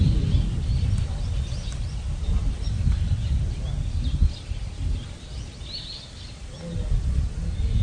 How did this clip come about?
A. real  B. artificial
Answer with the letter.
A